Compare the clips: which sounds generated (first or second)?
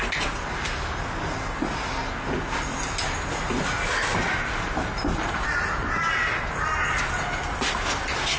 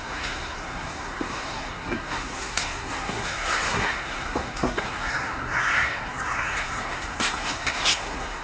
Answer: second